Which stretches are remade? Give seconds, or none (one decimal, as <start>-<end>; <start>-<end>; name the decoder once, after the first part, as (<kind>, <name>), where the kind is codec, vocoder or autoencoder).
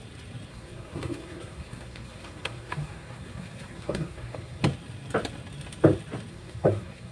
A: 0.5-4.6 (codec, SNAC); 6.3-7.1